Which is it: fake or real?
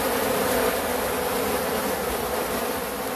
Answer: real